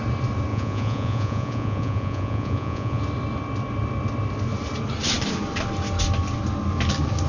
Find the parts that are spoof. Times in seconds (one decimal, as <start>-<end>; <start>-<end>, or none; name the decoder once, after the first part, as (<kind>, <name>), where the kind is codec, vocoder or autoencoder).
0.5-3.0 (vocoder, Vocos)